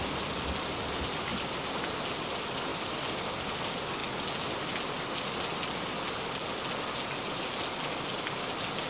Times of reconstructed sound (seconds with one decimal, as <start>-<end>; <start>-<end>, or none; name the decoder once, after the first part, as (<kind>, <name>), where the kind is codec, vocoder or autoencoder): none